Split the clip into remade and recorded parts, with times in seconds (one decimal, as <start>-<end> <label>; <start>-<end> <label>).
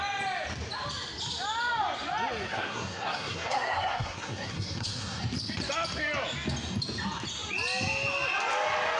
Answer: 0.0-2.5 recorded; 2.5-5.2 remade; 5.2-9.0 recorded